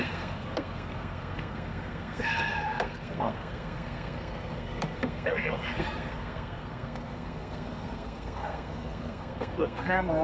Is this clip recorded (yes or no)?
no